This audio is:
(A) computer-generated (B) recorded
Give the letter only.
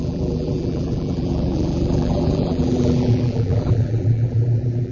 A